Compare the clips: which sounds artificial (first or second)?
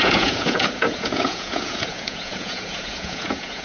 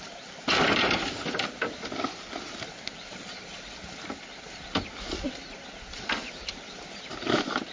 first